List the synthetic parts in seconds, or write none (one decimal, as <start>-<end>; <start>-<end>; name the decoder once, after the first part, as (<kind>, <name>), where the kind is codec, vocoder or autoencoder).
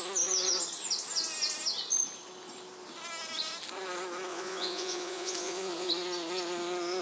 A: 4.3-5.9 (vocoder, Vocos)